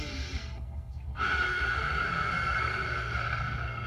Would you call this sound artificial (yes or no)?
yes